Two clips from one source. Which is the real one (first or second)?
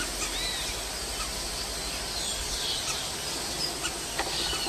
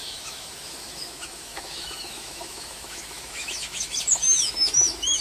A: first